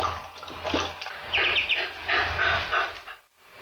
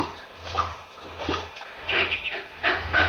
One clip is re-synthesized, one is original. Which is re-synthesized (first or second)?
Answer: second